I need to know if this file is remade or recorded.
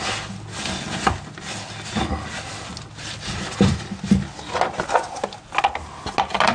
recorded